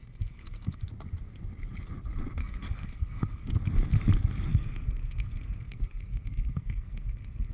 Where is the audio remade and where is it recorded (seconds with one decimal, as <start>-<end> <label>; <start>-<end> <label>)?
0.0-0.9 remade; 0.9-2.4 recorded; 2.4-3.5 remade; 3.5-4.5 recorded; 4.5-7.5 remade